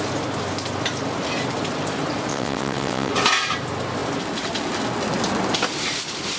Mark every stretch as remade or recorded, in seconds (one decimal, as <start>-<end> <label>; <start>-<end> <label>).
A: 0.0-2.3 recorded; 2.3-3.1 remade; 3.1-6.4 recorded